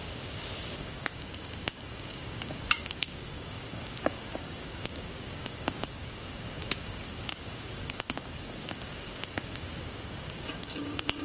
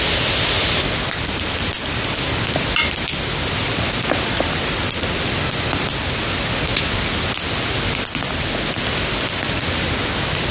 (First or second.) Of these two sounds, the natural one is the second